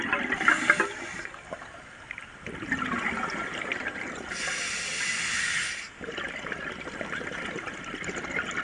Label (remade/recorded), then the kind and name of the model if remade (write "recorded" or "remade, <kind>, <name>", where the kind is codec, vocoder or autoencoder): recorded